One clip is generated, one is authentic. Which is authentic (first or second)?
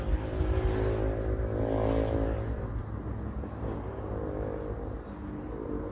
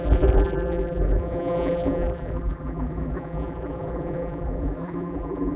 first